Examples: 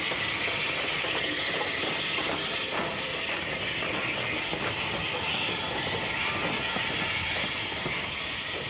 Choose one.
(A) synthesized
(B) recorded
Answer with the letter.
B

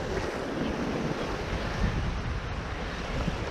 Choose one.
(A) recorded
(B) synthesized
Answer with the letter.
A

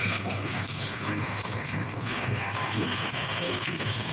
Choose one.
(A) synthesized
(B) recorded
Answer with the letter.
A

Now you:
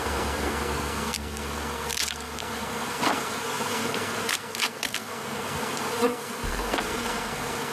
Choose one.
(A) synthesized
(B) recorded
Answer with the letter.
A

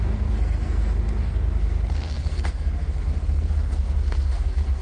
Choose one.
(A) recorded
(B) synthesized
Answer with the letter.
B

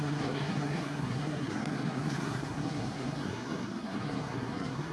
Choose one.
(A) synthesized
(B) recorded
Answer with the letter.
A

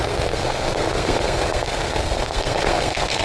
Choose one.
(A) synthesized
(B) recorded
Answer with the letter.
A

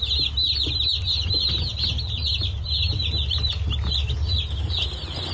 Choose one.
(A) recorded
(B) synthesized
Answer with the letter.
A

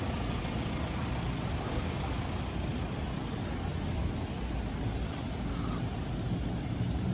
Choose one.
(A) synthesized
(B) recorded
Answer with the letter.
B